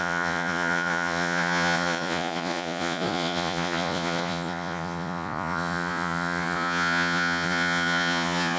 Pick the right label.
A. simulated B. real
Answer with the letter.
A